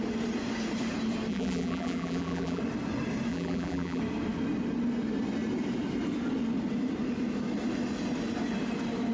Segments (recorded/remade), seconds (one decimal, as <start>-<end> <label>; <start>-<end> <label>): 0.0-1.3 recorded; 1.3-2.6 remade; 2.6-3.3 recorded; 3.3-4.0 remade; 4.0-9.1 recorded